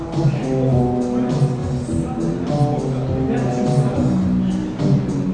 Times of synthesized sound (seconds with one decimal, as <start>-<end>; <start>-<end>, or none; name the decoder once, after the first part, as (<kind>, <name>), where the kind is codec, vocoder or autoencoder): none